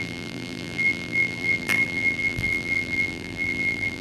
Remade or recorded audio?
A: remade